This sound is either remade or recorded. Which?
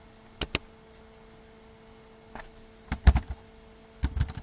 recorded